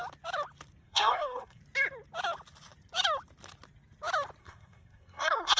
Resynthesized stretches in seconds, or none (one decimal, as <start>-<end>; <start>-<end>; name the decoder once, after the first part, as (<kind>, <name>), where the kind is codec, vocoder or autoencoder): 0.8-1.6 (codec, SNAC); 4.4-5.6